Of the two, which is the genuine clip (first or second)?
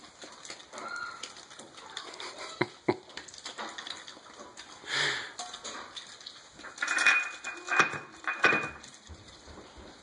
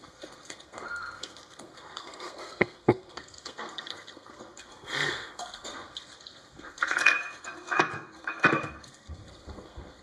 first